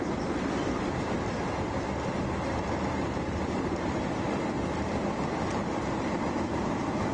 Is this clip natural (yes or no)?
yes